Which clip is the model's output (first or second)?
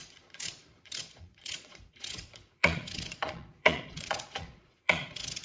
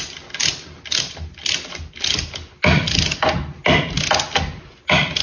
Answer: first